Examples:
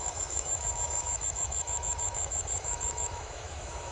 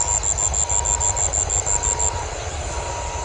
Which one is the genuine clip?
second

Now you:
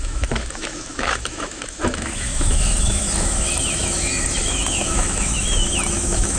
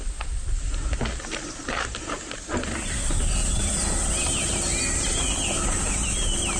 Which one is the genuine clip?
second